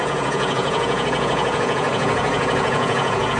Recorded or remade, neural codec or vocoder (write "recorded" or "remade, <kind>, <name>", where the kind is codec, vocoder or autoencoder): remade, vocoder, Vocos